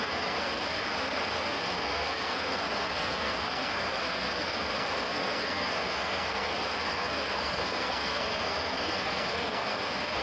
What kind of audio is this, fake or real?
fake